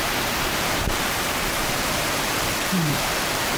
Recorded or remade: remade